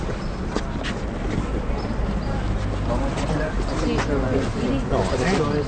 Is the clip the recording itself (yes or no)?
yes